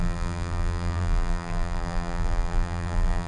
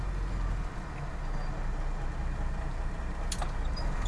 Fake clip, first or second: first